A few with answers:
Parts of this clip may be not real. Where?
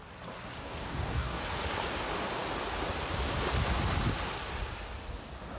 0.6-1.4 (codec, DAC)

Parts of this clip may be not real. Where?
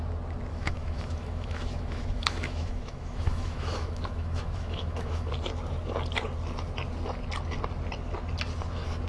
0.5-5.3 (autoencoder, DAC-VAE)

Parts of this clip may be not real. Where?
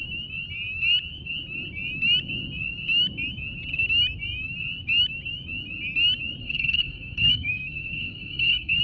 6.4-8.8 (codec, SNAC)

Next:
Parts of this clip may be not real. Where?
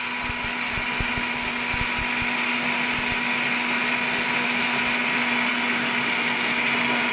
none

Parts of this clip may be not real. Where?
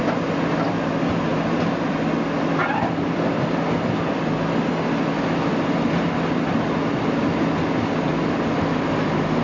none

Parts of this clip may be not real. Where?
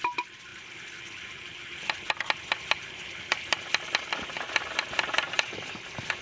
none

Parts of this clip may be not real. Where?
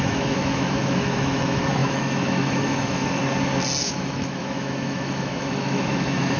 0.0-3.2 (autoencoder, DAC-VAE); 3.8-6.4